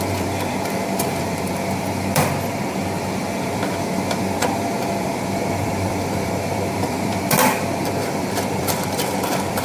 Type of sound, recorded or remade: remade